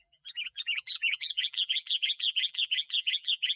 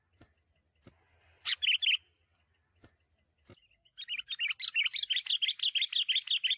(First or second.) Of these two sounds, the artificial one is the first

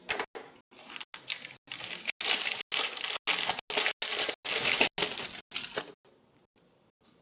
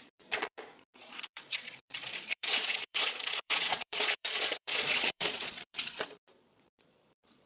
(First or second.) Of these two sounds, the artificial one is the second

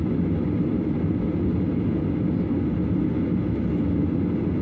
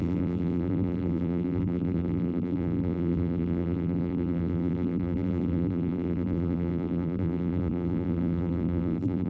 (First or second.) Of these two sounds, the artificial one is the second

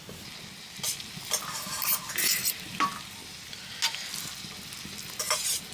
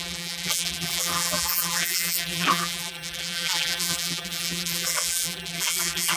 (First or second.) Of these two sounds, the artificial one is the second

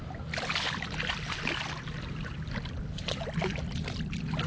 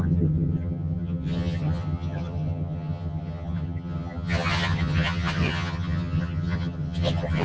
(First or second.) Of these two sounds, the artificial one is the second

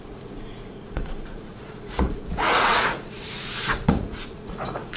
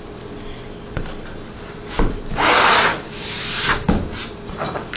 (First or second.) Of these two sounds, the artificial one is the first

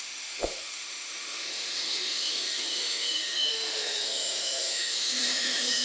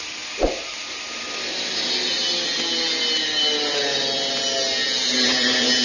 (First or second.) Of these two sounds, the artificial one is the first